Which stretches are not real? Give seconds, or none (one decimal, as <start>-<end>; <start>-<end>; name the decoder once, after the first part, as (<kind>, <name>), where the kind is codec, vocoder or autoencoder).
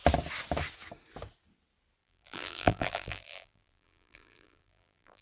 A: 2.0-5.2 (vocoder, BigVGAN v2)